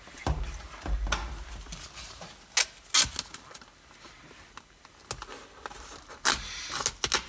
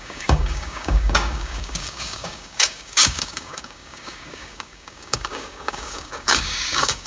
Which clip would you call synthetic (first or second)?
second